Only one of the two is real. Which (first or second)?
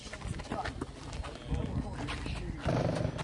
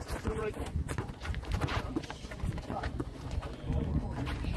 first